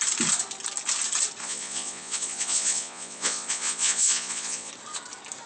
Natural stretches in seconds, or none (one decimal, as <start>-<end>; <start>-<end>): 0.0-1.4; 4.7-5.5